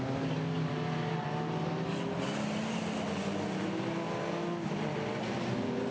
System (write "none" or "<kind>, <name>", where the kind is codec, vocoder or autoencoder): none